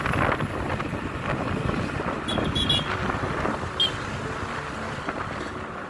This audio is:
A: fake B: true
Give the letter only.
B